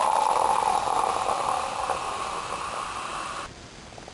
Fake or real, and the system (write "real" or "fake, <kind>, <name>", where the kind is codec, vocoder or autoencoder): real